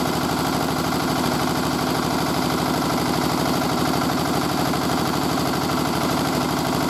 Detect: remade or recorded remade